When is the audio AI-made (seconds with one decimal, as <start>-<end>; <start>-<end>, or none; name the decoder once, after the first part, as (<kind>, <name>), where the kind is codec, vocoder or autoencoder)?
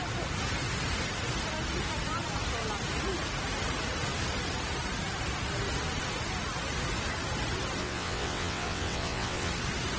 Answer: 7.8-9.5 (vocoder, WaveNeXt)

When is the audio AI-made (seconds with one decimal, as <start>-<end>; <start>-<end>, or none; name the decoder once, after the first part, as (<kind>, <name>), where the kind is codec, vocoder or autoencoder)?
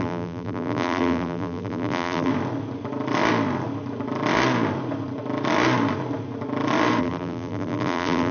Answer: 0.0-2.3 (vocoder, BigVGAN v2); 7.0-8.3